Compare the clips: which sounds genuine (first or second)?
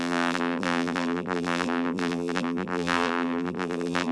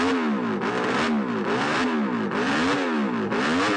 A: second